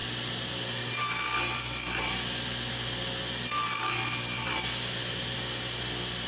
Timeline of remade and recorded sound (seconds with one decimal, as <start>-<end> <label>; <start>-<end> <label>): 0.0-6.3 recorded

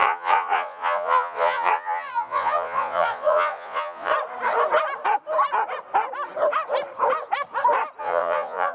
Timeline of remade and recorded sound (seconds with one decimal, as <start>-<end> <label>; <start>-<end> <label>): 0.0-4.1 remade; 4.1-8.0 recorded; 8.0-8.7 remade

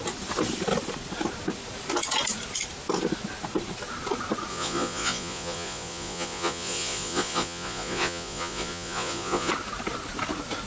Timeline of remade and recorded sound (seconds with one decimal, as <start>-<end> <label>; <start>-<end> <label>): 0.0-4.5 recorded; 4.5-9.5 remade; 9.5-10.7 recorded

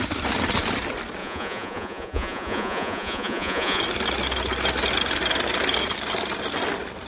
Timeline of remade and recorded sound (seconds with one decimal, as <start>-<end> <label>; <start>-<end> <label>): 0.0-1.2 recorded; 1.2-3.8 remade; 3.8-7.1 recorded

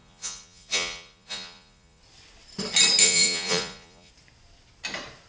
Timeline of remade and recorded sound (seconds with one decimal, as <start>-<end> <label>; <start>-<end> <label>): 0.0-2.0 remade; 2.0-3.0 recorded; 3.0-4.1 remade; 4.1-5.3 recorded